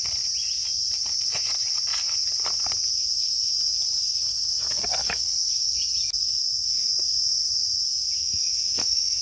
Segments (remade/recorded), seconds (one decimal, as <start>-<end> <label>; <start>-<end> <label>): 0.0-5.0 recorded; 5.0-5.8 remade; 5.8-8.2 recorded; 8.2-9.2 remade

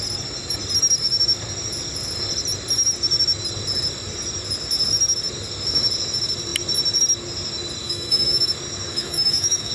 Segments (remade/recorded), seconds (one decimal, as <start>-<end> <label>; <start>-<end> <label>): 0.0-7.8 recorded; 7.8-8.5 remade; 8.5-8.9 recorded; 8.9-9.7 remade

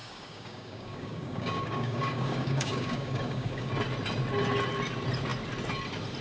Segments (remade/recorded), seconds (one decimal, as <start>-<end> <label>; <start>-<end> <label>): 0.0-3.7 remade; 3.7-6.2 recorded